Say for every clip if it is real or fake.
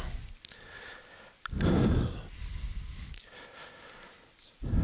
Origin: real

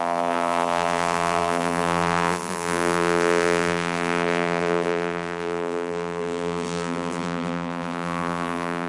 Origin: fake